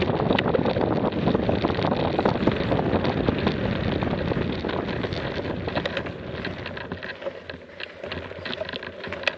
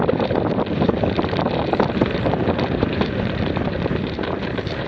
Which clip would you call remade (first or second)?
second